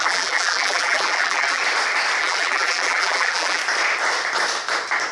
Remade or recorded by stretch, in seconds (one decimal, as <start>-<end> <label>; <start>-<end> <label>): 0.0-1.6 remade; 1.6-2.2 recorded; 2.2-3.6 remade; 3.6-5.1 recorded